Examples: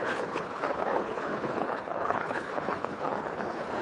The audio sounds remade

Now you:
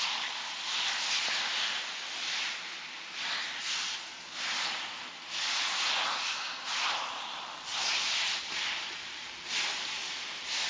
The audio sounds recorded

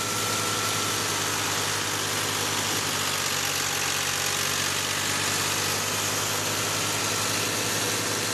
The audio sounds recorded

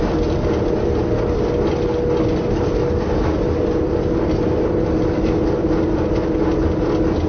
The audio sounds recorded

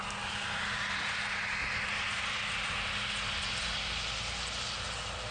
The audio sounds recorded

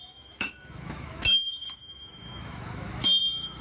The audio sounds remade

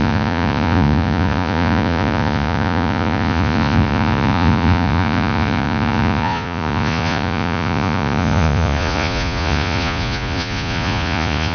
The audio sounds remade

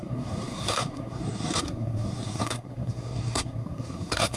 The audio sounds remade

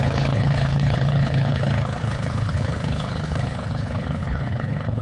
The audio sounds remade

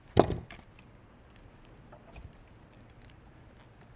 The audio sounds recorded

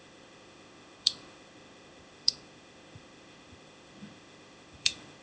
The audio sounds remade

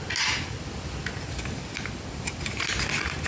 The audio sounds recorded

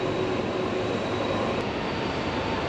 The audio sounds recorded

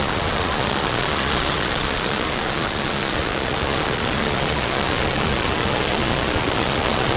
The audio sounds remade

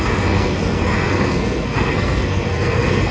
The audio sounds remade